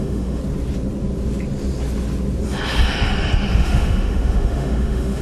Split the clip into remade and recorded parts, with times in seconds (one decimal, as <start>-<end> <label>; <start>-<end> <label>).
0.0-0.4 remade; 0.4-3.5 recorded; 3.5-5.2 remade